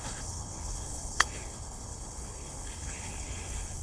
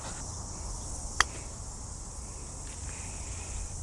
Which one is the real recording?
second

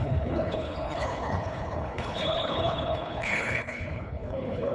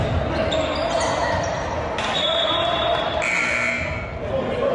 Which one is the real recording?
second